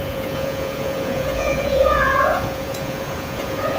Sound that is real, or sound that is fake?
fake